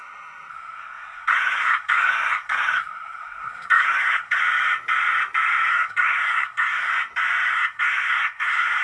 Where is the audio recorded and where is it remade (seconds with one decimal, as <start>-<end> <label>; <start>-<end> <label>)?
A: 0.0-0.5 recorded; 0.5-4.4 remade; 4.4-5.7 recorded; 5.7-6.9 remade; 6.9-7.5 recorded; 7.5-8.8 remade